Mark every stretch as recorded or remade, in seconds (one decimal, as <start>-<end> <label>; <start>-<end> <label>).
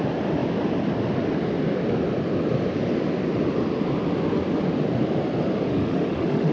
0.0-5.7 recorded; 5.7-6.5 remade